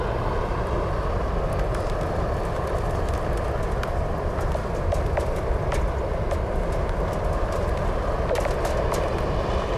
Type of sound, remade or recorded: recorded